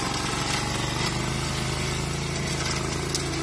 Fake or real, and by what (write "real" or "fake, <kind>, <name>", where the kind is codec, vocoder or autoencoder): real